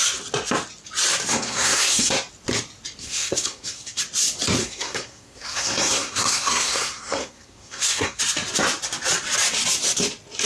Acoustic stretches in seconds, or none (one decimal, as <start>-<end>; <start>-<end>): 0.0-1.3; 2.1-3.0; 4.0-4.6; 8.2-10.5